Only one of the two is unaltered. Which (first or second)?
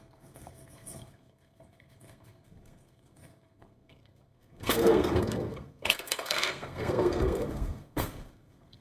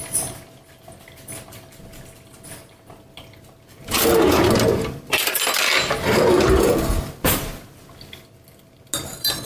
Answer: second